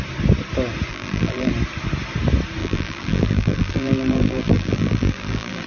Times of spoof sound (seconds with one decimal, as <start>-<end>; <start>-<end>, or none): 0.9-1.5; 2.6-5.7